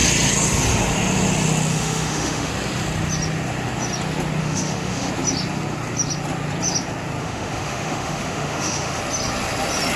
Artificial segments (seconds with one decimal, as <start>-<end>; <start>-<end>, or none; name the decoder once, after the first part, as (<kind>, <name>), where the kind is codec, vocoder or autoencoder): 1.7-2.5 (autoencoder, DAC-VAE); 4.4-5.1; 7.2-9.0